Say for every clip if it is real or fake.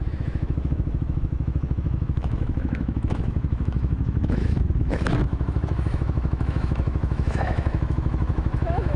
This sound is fake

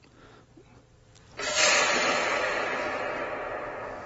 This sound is real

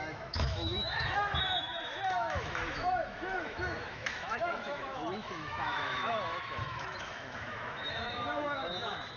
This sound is fake